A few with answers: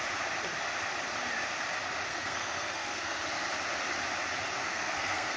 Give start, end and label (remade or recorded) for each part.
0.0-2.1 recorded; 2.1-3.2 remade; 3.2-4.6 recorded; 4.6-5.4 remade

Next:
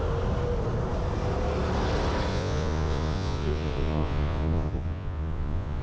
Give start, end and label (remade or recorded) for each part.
0.0-2.3 recorded; 2.3-5.8 remade

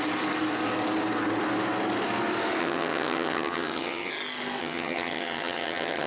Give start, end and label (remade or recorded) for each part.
0.0-2.6 recorded; 2.6-4.1 remade; 4.1-4.6 recorded; 4.6-6.1 remade